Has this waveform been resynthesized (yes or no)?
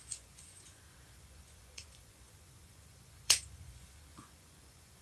yes